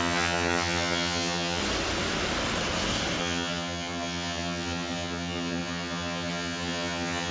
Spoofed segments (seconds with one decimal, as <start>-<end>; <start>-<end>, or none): 0.0-1.6; 3.2-7.3